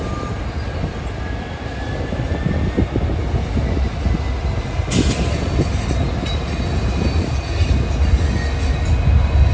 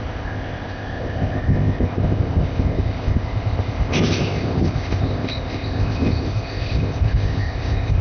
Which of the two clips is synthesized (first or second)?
second